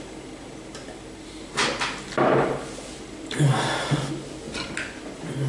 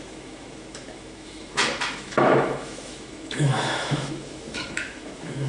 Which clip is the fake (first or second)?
second